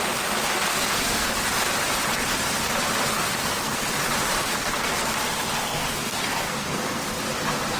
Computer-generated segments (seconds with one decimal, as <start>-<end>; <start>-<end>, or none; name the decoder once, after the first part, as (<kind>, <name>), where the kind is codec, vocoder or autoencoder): 0.7-1.3 (codec, SNAC); 3.2-3.9; 4.5-5.1; 5.8-7.1